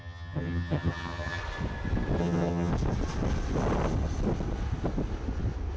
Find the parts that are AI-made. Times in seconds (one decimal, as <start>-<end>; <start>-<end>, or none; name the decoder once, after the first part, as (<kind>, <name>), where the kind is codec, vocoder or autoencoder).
0.0-1.4 (vocoder, HiFi-GAN); 2.2-2.7